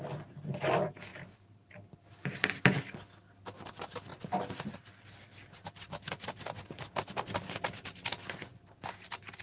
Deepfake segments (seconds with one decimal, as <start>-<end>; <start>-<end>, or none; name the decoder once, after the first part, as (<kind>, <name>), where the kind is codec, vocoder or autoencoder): 1.1-1.7 (vocoder, BigVGAN v2); 4.1-4.7